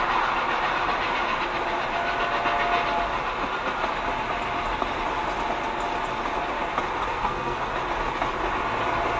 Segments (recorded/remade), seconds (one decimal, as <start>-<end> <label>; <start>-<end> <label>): 0.0-7.1 recorded; 7.1-7.7 remade; 7.7-9.2 recorded